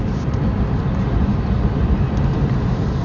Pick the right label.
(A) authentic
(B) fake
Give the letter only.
A